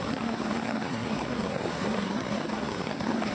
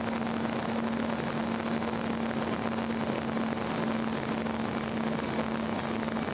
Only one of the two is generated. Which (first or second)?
first